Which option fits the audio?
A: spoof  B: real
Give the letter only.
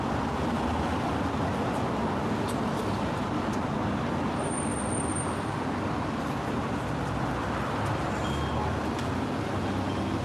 B